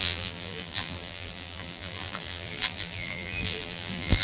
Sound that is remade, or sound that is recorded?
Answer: remade